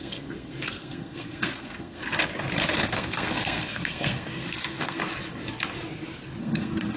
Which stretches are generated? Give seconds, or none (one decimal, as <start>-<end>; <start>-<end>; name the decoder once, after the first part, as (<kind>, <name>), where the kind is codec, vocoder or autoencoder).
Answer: 0.0-2.0 (codec, SNAC); 2.7-5.0; 6.4-7.0